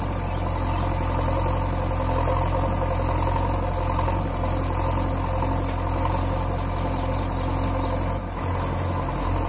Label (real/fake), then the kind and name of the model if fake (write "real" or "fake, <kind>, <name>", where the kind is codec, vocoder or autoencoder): real